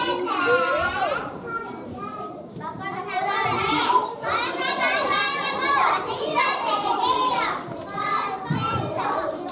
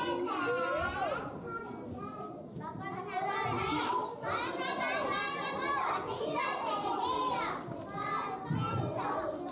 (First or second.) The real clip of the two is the second